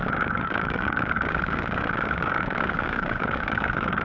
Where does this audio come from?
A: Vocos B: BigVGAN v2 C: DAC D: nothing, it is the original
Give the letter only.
C